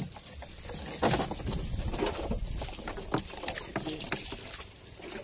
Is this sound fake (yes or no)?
no